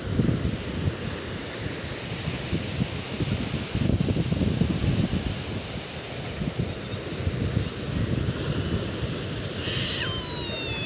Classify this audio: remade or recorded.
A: recorded